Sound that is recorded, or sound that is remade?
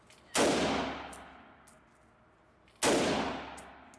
recorded